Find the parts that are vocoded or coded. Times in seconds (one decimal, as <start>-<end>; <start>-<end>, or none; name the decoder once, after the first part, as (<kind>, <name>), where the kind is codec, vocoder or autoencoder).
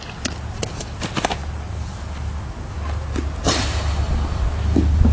none